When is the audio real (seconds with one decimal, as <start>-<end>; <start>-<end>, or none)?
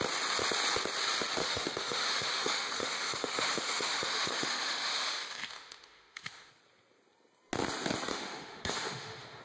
0.0-1.4; 6.5-8.1